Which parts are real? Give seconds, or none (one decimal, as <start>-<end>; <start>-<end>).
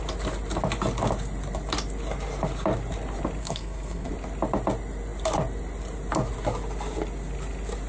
0.0-3.4; 4.1-7.9